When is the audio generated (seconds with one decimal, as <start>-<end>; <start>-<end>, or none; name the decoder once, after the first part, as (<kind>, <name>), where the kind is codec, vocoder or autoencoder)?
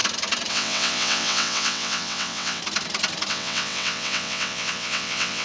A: 0.5-2.6 (vocoder, WaveNeXt); 3.3-5.4